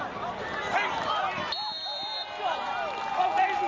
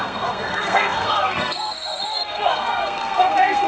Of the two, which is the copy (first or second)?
second